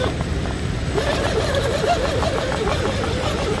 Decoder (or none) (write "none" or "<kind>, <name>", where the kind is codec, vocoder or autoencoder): none